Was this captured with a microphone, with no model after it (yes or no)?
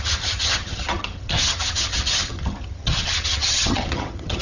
no